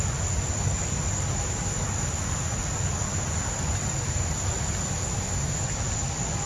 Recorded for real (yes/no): yes